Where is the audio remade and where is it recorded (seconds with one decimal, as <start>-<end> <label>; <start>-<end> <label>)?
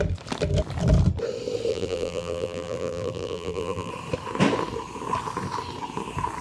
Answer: 0.0-1.7 recorded; 1.7-3.9 remade; 3.9-6.4 recorded